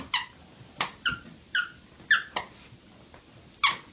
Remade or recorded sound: recorded